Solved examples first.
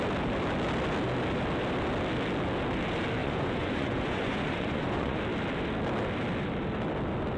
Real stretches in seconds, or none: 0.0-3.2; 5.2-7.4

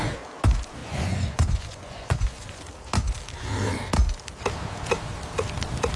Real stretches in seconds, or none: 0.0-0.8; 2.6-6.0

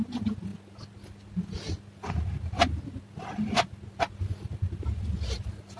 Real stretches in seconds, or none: 0.0-5.8